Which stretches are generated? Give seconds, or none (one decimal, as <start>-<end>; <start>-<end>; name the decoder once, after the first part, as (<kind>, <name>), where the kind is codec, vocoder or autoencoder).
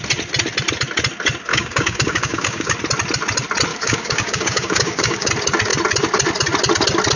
1.5-2.7 (codec, DAC); 3.7-5.3